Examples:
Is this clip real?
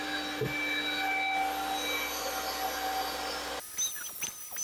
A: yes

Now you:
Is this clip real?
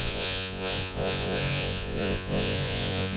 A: no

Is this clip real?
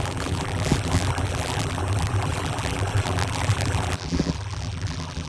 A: no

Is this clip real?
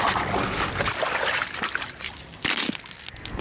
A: yes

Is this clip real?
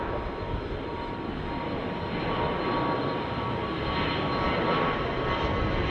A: yes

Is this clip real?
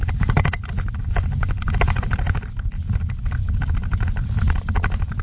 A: yes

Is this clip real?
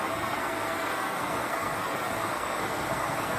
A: no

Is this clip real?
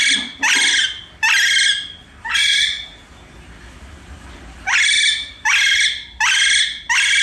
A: yes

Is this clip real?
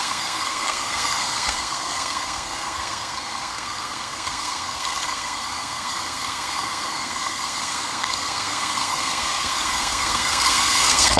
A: no